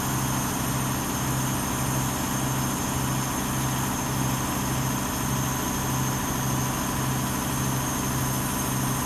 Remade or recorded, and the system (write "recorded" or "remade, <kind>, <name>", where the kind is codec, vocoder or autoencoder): recorded